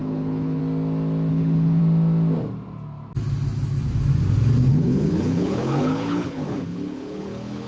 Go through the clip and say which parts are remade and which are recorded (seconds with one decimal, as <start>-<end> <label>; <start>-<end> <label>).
0.0-0.6 remade; 0.6-1.3 recorded; 1.3-1.8 remade; 1.8-4.7 recorded; 4.7-7.7 remade